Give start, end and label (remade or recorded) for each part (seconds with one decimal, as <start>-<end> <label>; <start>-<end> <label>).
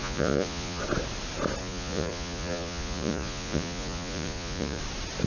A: 0.0-0.8 remade; 0.8-1.6 recorded; 1.6-4.8 remade; 4.8-5.3 recorded